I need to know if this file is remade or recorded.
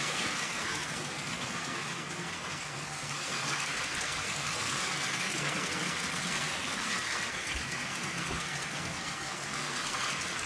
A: remade